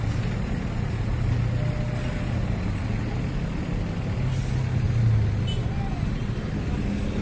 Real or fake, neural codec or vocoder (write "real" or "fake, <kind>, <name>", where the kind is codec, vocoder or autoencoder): real